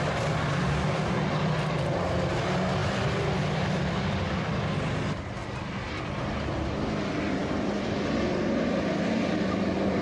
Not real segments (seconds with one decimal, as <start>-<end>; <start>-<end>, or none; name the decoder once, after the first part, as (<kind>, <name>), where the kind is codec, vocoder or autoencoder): 2.8-4.7 (vocoder, BigVGAN v2); 7.4-7.9